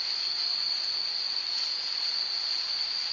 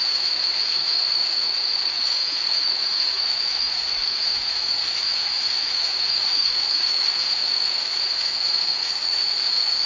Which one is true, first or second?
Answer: first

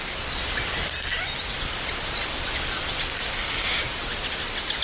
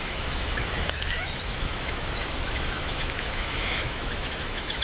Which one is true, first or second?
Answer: first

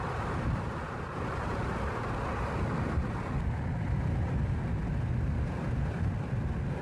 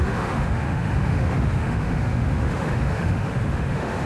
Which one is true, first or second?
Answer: first